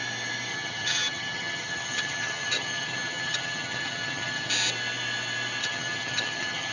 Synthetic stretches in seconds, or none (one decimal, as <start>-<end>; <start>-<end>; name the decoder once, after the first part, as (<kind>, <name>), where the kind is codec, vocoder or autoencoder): 0.5-4.5 (vocoder, HiFi-GAN); 5.6-6.7